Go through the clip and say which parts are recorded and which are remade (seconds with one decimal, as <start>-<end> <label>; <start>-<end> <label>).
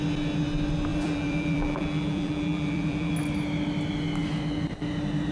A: 0.0-0.9 recorded; 0.9-3.1 remade; 3.1-5.3 recorded